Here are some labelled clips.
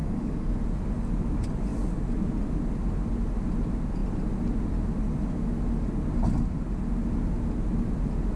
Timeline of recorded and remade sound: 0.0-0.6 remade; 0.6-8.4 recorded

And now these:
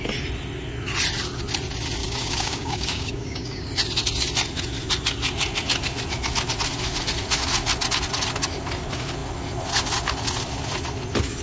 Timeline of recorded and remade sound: 0.0-2.0 recorded; 2.0-3.7 remade; 3.7-11.4 recorded

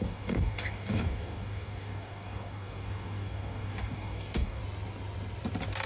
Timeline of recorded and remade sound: 0.0-4.6 remade; 4.6-5.9 recorded

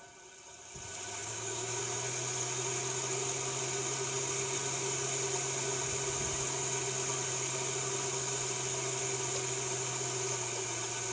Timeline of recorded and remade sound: 0.0-1.2 recorded; 1.2-1.8 remade; 1.8-11.1 recorded

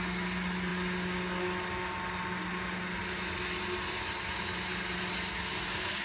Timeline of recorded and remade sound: 0.0-6.0 recorded